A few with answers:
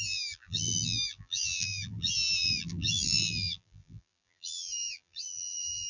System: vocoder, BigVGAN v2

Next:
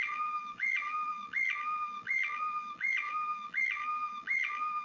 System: vocoder, BigVGAN v2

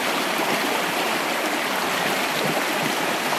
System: none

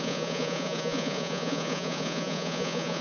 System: vocoder, Vocos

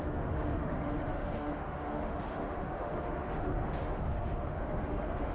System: autoencoder, DAC-VAE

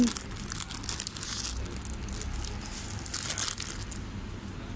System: none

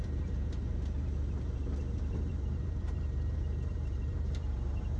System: vocoder, BigVGAN v2